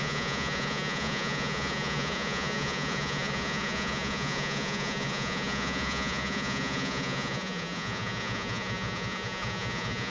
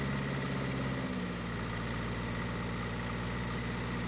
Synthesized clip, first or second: first